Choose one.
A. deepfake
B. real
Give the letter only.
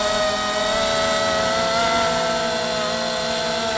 B